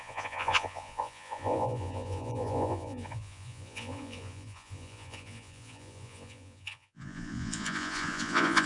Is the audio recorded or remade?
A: remade